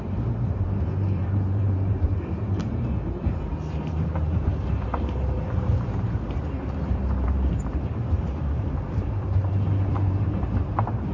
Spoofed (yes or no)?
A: yes